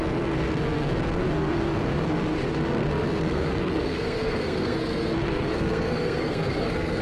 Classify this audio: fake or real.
fake